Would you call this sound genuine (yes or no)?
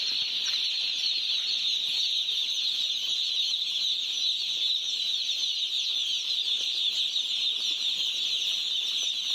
yes